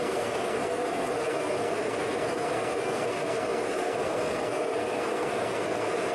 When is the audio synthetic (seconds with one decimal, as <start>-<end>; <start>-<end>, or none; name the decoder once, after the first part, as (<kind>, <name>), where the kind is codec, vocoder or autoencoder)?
0.0-6.1 (codec, SNAC)